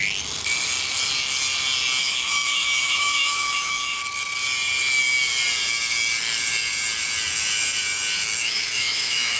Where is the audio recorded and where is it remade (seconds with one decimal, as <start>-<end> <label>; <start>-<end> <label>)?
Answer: 0.0-2.0 recorded; 2.0-4.0 remade; 4.0-8.4 recorded; 8.4-9.4 remade